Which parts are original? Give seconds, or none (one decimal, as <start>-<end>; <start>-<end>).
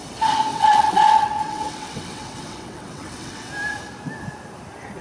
0.0-0.5; 3.5-5.0